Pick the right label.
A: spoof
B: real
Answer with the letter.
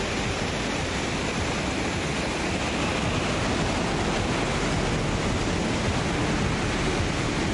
B